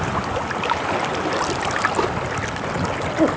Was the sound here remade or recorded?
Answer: recorded